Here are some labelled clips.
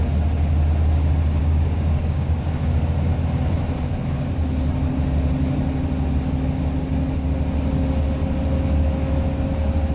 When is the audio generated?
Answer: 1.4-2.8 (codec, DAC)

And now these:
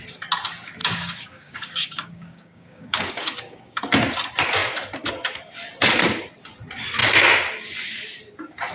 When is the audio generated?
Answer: 0.8-3.8 (codec, DAC)

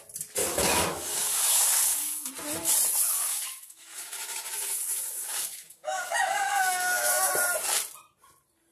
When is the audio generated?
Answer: 0.4-2.3 (codec, DAC); 3.1-7.3

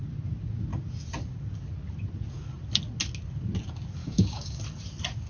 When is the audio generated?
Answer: 4.0-4.6 (codec, DAC)

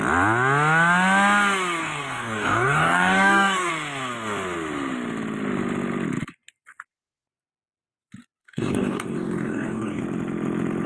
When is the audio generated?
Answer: 1.8-3.7 (codec, DAC); 8.4-10.0

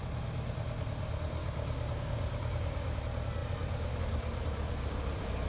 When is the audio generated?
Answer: 1.4-3.0 (codec, DAC)

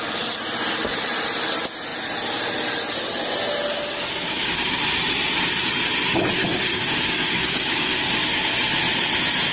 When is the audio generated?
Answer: 4.2-4.8 (codec, DAC); 6.4-7.9